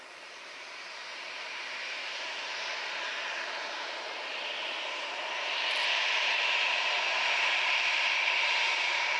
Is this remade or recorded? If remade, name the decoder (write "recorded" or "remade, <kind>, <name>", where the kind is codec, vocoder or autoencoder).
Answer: remade, vocoder, BigVGAN v2